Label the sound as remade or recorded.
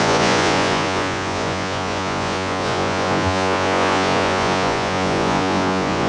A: remade